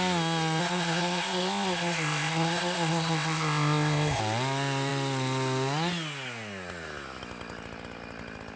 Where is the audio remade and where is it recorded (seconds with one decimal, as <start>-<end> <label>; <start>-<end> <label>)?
0.0-0.6 recorded; 0.6-4.2 remade; 4.2-8.6 recorded